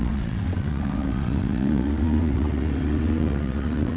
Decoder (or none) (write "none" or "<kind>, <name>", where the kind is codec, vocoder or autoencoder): vocoder, WaveNeXt